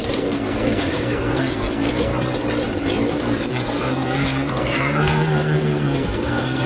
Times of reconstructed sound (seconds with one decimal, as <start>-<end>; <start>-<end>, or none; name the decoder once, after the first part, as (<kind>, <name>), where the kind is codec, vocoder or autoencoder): 0.0-2.1 (codec, SNAC); 3.1-6.7